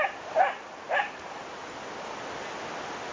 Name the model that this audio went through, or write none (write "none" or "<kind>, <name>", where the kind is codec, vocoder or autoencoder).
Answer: none